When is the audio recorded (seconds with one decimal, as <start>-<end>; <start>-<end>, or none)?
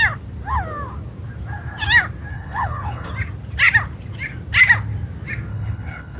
0.0-2.3; 3.1-5.5